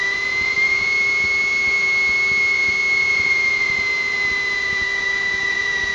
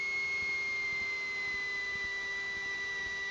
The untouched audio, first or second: second